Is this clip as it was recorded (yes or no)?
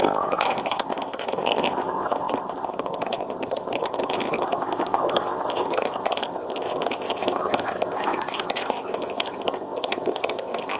no